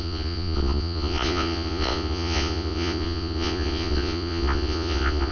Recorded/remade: remade